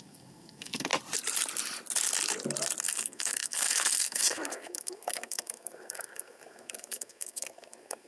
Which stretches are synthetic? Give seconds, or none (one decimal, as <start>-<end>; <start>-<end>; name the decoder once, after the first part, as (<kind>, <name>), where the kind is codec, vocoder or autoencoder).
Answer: 0.0-0.9 (codec, SNAC); 2.8-8.1